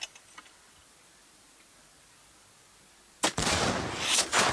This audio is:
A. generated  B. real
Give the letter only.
B